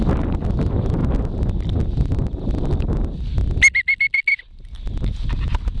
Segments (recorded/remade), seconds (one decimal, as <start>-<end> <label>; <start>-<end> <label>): 0.0-5.8 recorded